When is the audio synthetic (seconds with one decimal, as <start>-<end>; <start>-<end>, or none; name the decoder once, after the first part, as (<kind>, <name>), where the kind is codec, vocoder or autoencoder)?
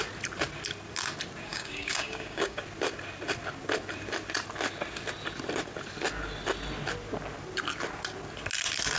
1.5-2.6 (codec, DAC)